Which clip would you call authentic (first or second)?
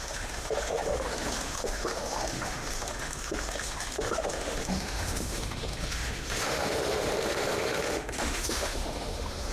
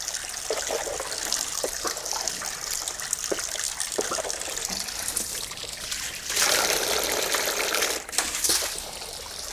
second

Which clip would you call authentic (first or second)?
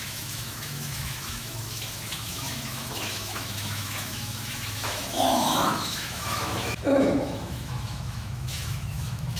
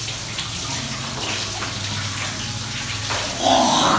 second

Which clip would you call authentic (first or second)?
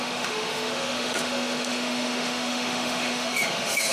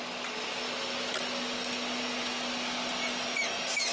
second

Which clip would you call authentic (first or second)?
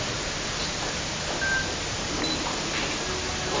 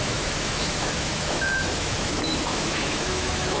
first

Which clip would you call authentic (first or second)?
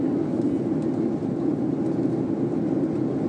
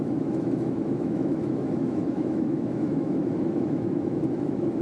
first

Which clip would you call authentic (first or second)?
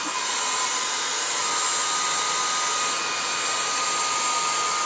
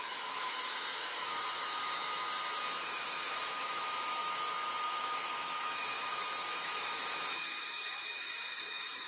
first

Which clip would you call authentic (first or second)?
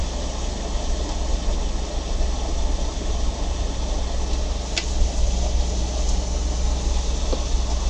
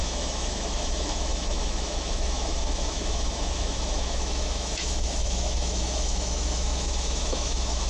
first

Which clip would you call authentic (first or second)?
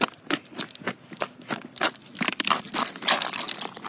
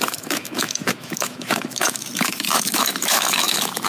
first